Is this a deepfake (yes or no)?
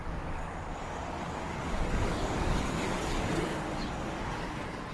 yes